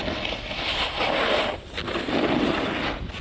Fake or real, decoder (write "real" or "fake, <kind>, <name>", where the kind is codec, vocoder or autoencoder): real